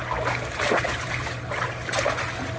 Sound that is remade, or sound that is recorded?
recorded